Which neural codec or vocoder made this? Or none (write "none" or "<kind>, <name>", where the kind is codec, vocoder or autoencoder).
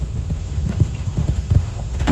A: autoencoder, DAC-VAE